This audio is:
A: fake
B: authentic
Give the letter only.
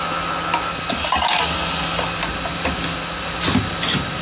B